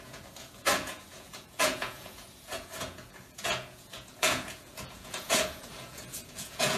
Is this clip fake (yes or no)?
yes